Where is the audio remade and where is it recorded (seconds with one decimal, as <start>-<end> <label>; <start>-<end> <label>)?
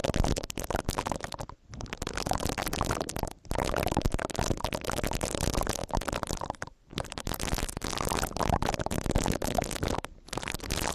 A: 0.0-2.6 recorded; 2.6-3.6 remade; 3.6-5.8 recorded; 5.8-8.8 remade; 8.8-10.9 recorded